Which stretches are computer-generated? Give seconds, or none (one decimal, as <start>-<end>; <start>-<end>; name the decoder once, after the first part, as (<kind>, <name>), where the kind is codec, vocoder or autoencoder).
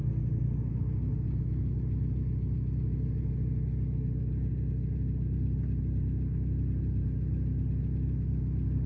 none